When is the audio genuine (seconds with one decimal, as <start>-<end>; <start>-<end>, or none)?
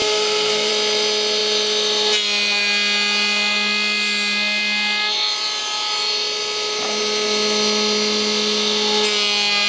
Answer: 0.7-9.7